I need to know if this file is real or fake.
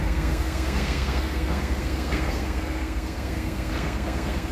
fake